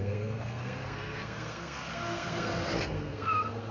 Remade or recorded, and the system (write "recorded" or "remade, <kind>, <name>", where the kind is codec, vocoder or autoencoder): remade, codec, SNAC